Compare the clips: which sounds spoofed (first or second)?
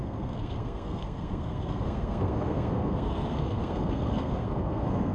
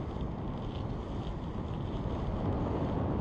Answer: first